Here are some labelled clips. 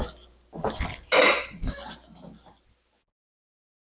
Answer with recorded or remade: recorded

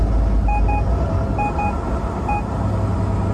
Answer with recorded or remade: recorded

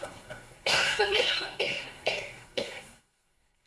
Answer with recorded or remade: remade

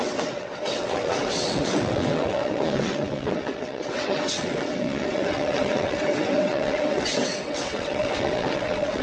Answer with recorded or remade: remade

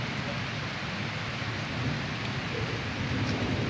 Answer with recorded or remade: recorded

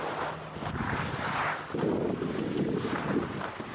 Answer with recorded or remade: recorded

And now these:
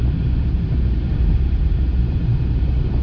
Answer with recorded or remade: remade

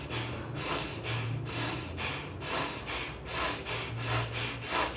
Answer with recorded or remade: recorded